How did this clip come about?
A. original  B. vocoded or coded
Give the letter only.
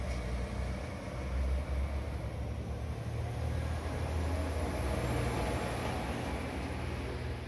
A